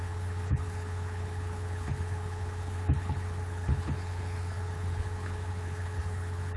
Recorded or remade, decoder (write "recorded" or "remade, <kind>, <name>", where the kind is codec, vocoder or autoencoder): remade, codec, HILCodec